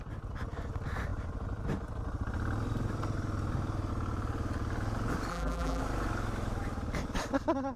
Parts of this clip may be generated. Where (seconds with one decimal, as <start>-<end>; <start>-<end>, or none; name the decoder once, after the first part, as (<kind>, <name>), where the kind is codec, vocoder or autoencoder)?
5.3-5.8 (vocoder, BigVGAN v2)